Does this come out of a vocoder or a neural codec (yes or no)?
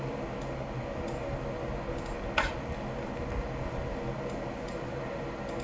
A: no